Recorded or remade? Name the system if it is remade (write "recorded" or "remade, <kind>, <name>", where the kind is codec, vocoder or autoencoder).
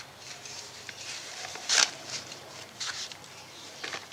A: remade, vocoder, BigVGAN v2